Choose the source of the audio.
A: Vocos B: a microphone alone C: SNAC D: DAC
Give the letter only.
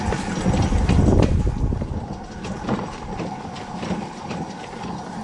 B